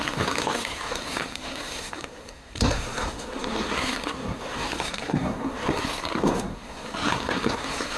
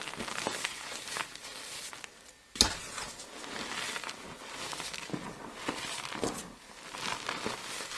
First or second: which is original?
second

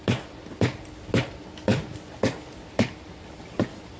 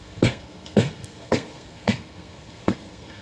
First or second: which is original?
first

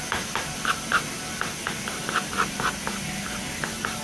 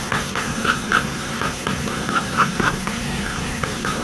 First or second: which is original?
first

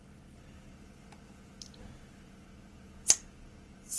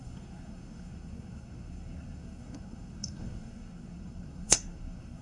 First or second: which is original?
first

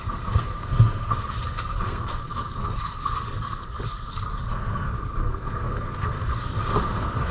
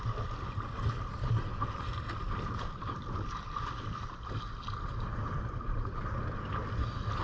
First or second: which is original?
second